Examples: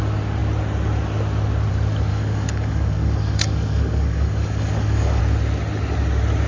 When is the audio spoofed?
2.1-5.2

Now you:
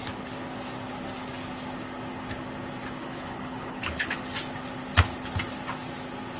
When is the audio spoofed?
3.0-4.2

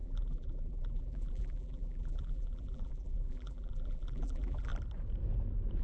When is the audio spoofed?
0.0-4.7

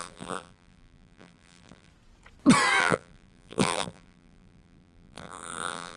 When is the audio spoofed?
0.0-1.9; 2.8-6.0

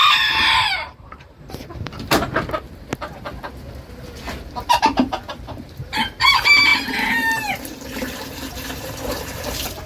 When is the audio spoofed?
0.0-2.3; 4.5-9.9

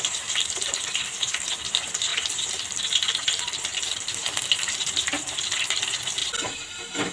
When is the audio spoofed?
0.0-6.2